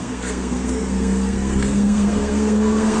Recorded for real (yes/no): no